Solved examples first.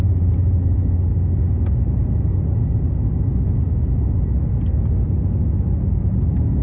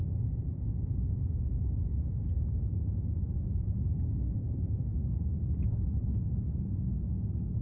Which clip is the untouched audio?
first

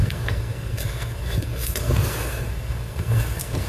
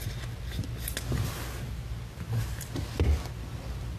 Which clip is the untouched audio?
second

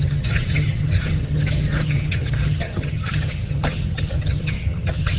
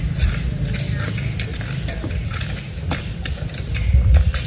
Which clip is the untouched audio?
second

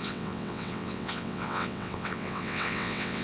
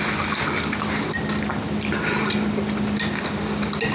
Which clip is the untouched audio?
second